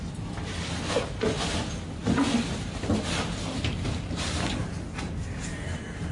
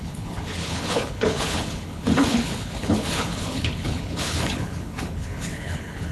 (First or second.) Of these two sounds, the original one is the first